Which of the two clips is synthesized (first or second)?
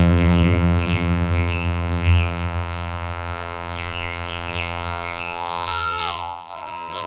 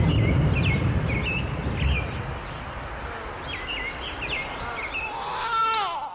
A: first